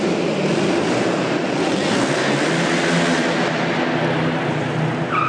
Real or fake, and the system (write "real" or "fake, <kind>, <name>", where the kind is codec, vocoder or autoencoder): real